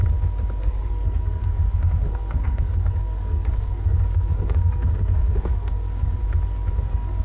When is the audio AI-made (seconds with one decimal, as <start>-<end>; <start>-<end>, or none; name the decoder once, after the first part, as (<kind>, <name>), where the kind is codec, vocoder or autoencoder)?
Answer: 0.6-6.2 (codec, SNAC); 6.7-7.2